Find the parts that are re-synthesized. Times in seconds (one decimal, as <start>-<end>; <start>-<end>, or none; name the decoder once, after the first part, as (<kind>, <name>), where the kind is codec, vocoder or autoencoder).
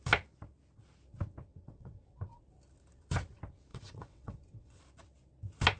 1.5-2.4 (vocoder, WaveNeXt); 3.7-4.8